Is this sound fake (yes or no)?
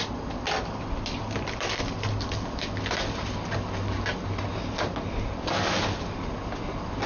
no